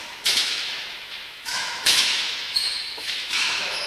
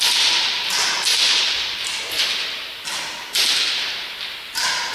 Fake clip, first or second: first